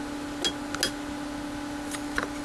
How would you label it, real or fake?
real